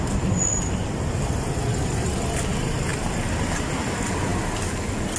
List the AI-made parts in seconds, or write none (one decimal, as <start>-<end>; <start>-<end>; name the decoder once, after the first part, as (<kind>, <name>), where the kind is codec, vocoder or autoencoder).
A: none